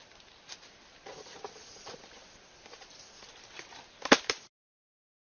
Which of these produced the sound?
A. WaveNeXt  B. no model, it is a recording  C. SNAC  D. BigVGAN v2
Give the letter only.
B